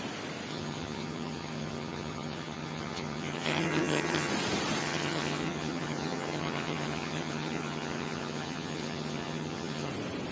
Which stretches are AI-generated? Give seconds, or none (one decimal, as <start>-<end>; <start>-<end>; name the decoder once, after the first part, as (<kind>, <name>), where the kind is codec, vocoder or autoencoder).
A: 0.5-4.3 (vocoder, HiFi-GAN); 4.8-9.9